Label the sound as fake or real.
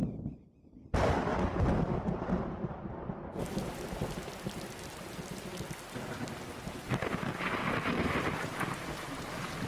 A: real